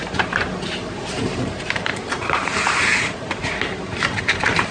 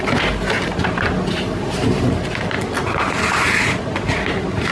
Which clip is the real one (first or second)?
second